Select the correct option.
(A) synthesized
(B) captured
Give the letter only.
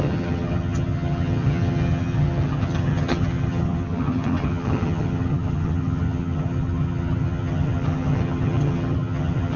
A